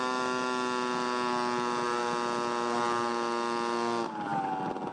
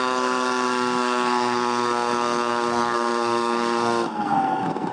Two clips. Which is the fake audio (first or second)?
second